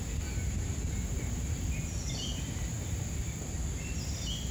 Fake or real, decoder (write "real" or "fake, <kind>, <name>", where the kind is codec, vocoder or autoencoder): real